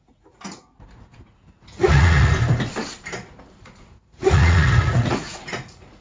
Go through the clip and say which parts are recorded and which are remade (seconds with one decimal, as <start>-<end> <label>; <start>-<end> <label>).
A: 0.0-2.3 remade; 2.3-3.6 recorded; 3.6-6.0 remade